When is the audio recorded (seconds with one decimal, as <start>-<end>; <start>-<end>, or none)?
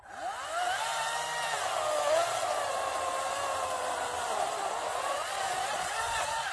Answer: 0.0-4.9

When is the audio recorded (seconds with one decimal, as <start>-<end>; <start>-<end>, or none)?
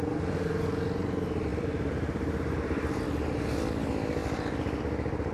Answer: 0.0-1.5; 3.0-5.3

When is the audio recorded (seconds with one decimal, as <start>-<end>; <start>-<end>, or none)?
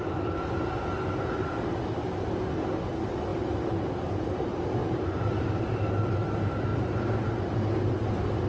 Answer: 0.0-3.3; 4.2-4.8; 5.8-6.7; 7.3-8.5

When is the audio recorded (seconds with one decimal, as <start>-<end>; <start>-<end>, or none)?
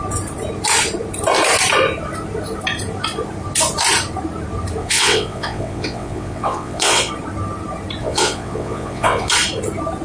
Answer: 0.0-4.8; 7.1-8.0; 9.3-10.0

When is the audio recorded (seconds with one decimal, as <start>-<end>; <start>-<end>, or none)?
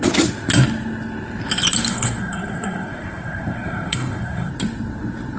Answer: 0.0-1.9; 4.5-5.4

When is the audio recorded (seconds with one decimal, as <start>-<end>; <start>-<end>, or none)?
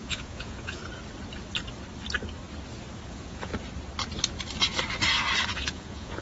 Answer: 0.8-3.1; 3.5-5.5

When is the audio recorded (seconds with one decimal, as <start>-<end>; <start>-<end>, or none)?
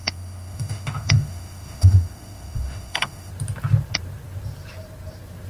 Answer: 3.3-5.5